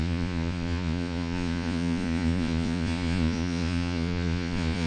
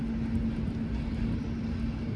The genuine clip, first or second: second